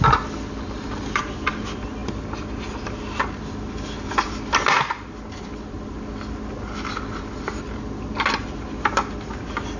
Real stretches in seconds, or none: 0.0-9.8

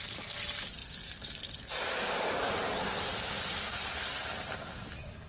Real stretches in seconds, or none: 0.0-5.3